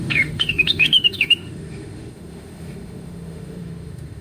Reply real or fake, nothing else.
fake